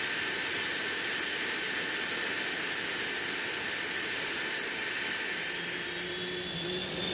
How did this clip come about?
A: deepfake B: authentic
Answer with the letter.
B